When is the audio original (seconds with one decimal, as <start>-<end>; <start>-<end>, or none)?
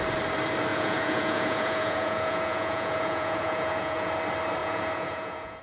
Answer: 0.0-0.7; 4.1-4.6